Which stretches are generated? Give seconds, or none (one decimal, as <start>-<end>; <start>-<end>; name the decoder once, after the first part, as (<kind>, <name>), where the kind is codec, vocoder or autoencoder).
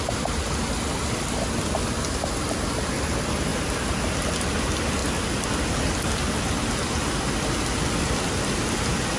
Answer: none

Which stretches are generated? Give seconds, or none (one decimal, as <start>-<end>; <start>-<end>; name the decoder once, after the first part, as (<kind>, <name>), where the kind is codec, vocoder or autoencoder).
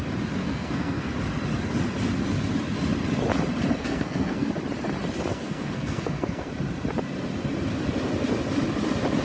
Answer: 0.4-1.1 (codec, SNAC); 3.8-4.5; 5.3-6.5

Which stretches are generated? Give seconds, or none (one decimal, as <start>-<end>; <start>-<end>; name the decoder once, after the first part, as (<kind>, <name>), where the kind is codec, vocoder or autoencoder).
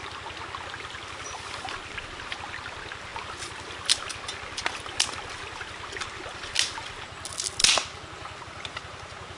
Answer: none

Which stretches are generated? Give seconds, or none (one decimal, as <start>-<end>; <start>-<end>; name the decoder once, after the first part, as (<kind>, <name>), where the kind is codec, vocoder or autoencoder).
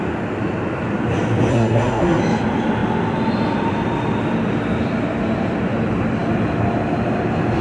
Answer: 1.5-2.2 (codec, SNAC)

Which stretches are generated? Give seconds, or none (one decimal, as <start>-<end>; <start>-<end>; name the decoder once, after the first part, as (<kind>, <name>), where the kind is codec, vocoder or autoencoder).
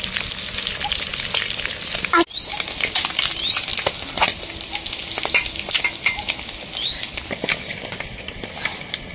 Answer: none